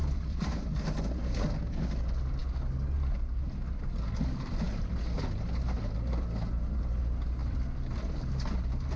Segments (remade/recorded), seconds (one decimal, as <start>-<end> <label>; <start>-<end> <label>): 0.0-9.0 recorded